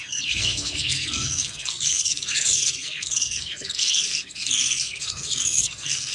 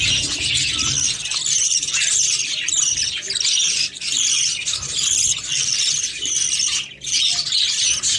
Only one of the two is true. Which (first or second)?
second